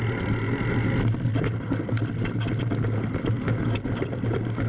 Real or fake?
real